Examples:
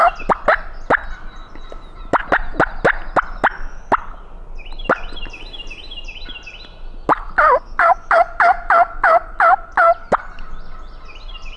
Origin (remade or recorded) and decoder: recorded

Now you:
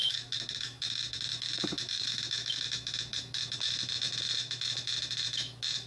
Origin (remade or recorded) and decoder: remade, autoencoder, DAC-VAE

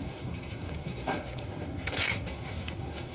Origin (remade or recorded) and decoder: remade, codec, SNAC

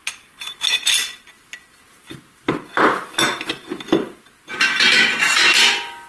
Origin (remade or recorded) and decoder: recorded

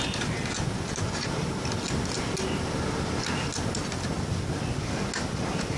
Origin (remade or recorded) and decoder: recorded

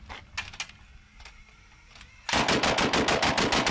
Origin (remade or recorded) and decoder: recorded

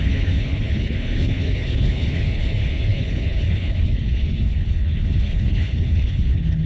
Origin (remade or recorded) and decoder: remade, codec, HILCodec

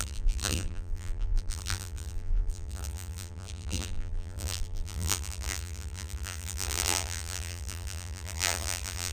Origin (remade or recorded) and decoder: remade, vocoder, BigVGAN v2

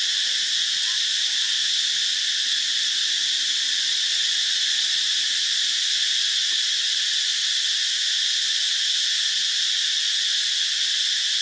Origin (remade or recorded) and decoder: recorded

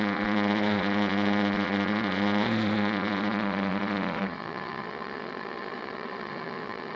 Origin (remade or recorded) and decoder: remade, vocoder, Vocos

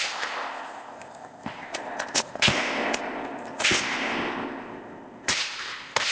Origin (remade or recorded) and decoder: remade, codec, ZipCodec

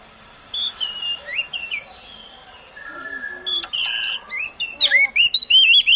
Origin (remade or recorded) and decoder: recorded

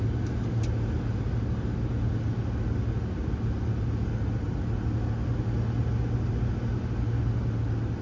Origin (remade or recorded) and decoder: recorded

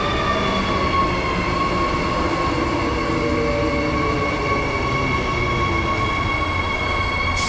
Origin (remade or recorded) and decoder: recorded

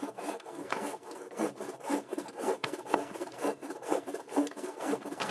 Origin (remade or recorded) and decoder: remade, codec, SNAC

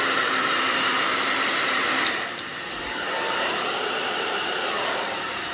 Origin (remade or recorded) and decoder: remade, vocoder, BigVGAN v2